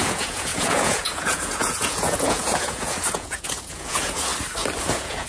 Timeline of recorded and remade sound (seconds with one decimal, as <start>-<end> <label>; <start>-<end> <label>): 0.0-4.3 remade; 4.3-4.8 recorded; 4.8-5.3 remade